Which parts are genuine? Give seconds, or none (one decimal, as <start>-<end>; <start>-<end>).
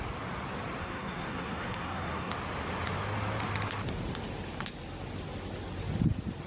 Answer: 0.0-0.8; 2.3-6.5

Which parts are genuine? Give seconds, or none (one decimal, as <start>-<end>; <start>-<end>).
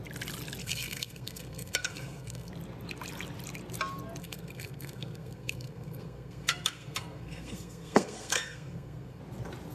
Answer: 0.0-0.6; 2.5-4.2; 9.2-9.7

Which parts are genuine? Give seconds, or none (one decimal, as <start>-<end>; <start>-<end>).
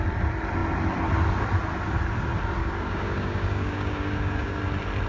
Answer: 0.0-2.6; 4.6-5.1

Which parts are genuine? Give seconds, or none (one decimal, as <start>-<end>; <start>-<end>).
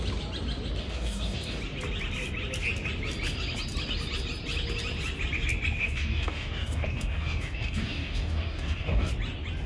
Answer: 0.0-0.8; 1.6-5.8; 9.1-9.7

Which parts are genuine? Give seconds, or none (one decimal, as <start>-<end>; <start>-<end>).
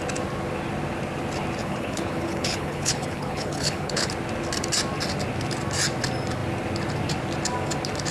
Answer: 0.0-1.6; 4.1-8.1